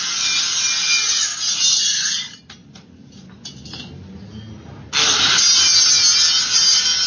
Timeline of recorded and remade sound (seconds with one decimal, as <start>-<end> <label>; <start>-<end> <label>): 0.0-7.1 recorded